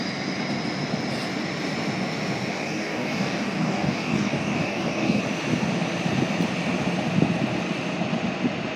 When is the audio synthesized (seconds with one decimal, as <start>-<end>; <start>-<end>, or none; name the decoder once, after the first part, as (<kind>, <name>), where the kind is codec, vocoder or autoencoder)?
2.5-5.2 (codec, DAC)